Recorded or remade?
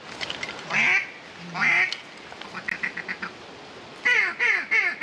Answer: recorded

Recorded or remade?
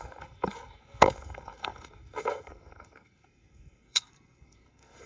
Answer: remade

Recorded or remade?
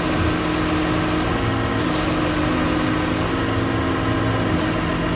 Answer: recorded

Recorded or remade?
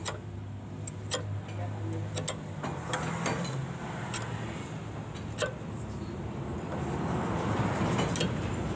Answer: recorded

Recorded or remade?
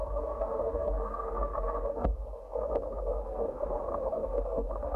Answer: remade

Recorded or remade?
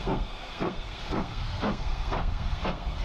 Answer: remade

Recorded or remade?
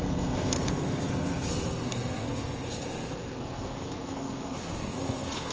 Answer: remade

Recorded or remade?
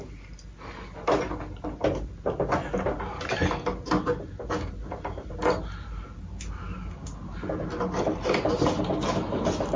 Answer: recorded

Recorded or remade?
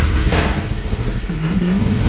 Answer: remade